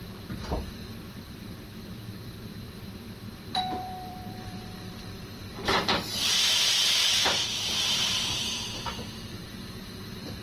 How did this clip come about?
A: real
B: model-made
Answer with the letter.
B